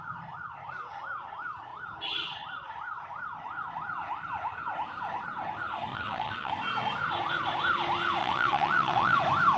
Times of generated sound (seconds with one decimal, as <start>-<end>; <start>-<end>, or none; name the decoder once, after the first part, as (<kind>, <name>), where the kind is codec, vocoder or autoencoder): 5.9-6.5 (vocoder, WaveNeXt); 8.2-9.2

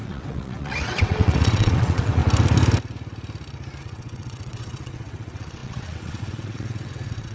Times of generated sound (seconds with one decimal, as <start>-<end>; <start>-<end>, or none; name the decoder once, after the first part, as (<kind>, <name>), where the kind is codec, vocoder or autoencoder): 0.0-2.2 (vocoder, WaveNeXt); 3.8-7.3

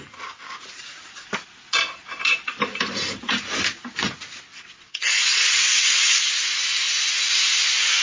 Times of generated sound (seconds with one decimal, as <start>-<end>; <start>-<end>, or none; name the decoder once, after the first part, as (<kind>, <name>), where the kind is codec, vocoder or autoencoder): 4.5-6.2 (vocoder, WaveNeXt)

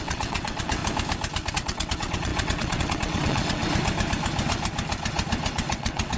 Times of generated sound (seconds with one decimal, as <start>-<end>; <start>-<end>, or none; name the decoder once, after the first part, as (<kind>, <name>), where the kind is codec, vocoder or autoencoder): 0.0-0.8 (vocoder, WaveNeXt); 1.5-3.6; 5.5-6.2

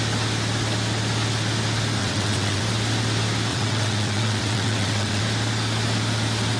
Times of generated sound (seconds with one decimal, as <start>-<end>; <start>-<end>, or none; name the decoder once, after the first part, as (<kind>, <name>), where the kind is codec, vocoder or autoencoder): 2.0-2.6 (vocoder, WaveNeXt); 3.5-5.2

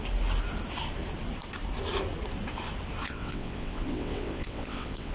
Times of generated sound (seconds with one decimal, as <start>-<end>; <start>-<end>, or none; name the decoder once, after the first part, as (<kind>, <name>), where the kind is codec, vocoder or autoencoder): 3.0-5.1 (vocoder, WaveNeXt)